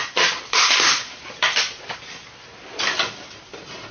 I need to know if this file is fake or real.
real